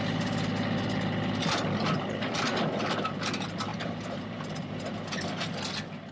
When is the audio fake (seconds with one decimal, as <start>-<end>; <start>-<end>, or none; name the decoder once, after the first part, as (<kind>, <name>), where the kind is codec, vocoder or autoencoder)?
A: 3.7-5.6 (vocoder, BigVGAN v2)